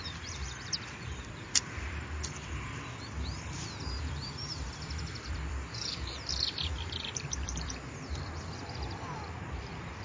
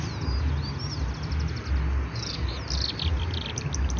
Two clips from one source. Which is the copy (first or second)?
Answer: first